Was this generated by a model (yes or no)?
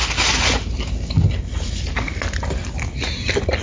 no